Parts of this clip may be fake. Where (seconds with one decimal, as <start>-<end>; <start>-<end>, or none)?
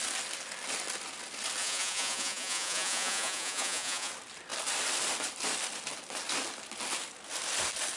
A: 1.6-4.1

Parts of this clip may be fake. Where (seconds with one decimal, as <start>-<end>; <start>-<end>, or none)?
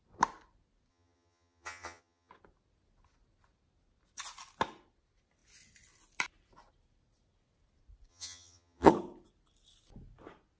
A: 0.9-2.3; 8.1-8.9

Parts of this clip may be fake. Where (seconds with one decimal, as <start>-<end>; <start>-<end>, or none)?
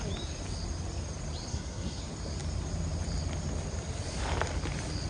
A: 1.5-2.0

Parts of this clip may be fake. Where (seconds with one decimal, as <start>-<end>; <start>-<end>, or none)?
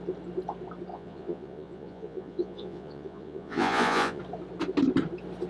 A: 0.9-4.2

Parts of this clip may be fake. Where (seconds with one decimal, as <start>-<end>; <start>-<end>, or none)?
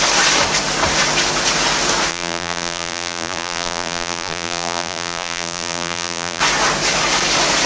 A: 2.1-6.4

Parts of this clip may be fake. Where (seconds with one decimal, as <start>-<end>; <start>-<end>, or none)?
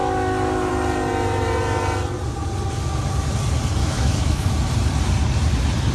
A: 0.0-0.7; 3.8-4.5